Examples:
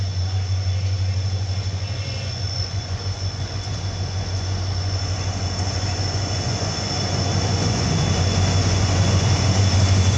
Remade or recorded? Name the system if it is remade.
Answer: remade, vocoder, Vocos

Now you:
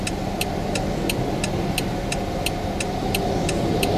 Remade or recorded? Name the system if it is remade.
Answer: recorded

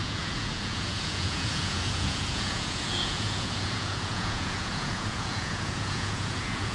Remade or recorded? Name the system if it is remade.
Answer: remade, vocoder, Vocos